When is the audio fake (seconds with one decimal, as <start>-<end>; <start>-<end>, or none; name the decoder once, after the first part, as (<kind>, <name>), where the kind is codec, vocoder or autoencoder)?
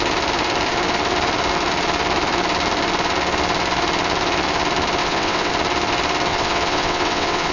5.0-5.5 (vocoder, WaveNeXt); 6.3-7.5